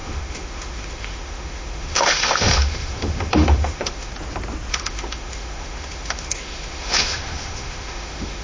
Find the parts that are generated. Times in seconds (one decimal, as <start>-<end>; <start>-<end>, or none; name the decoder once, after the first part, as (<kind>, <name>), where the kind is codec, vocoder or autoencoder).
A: 0.0-4.1 (autoencoder, DAC-VAE); 4.7-8.4